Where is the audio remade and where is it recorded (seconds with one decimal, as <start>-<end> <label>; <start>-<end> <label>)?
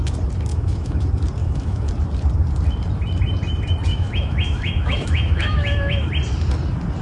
0.0-0.5 recorded; 0.5-1.0 remade; 1.0-1.4 recorded; 1.4-1.9 remade; 1.9-3.9 recorded; 3.9-6.1 remade; 6.1-7.0 recorded